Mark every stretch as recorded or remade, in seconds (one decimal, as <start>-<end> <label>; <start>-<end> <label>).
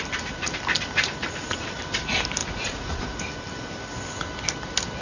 0.0-2.4 recorded; 2.4-3.2 remade; 3.2-5.0 recorded